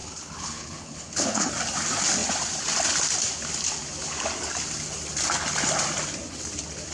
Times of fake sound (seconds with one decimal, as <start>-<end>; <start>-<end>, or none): 0.0-1.5